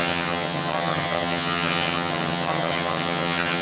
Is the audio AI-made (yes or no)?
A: yes